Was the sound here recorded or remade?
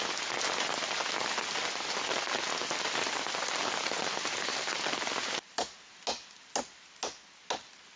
recorded